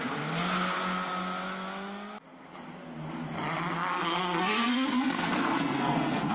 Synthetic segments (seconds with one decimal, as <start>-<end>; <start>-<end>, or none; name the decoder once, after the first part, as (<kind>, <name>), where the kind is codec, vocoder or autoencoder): 3.9-6.3 (codec, SNAC)